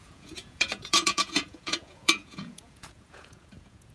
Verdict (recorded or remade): remade